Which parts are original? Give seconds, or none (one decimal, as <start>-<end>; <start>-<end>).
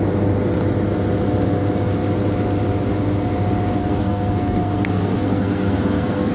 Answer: 0.0-3.8